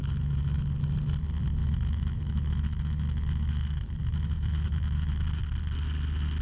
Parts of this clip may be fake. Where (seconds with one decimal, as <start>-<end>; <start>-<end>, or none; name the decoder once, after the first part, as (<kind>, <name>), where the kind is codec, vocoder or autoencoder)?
0.0-0.6 (autoencoder, DAC-VAE); 1.6-5.4